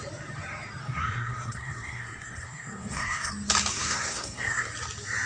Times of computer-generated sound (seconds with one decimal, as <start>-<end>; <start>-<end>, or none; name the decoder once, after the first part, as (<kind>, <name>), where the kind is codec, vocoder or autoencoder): 0.8-3.3 (codec, SNAC); 3.7-4.7